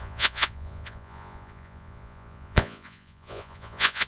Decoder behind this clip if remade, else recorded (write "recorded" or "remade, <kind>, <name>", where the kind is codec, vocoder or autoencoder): remade, vocoder, Vocos